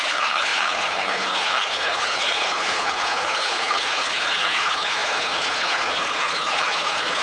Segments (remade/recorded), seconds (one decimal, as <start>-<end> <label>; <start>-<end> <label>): 0.0-7.2 remade